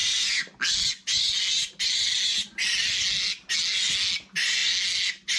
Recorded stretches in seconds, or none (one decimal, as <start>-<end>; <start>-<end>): 0.0-5.4